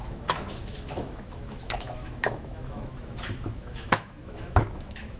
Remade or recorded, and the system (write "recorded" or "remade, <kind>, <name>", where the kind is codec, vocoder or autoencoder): remade, autoencoder, DAC-VAE